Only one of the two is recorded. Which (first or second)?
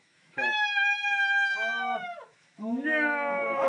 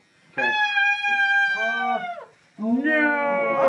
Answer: second